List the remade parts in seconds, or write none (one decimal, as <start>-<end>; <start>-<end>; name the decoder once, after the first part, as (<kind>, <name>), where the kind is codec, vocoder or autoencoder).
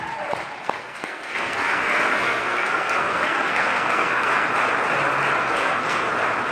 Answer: 0.6-4.5 (codec, SNAC); 5.4-6.1